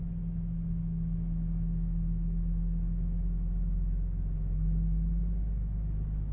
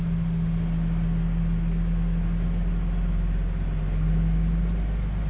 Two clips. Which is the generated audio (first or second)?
first